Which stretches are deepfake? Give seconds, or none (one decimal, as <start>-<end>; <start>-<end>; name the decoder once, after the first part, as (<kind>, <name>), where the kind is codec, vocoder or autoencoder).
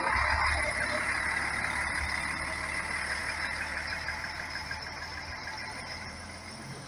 3.2-6.2 (vocoder, BigVGAN v2)